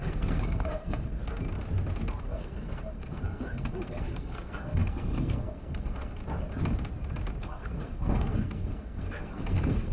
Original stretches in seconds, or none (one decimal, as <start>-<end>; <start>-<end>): 1.2-2.2; 6.2-7.4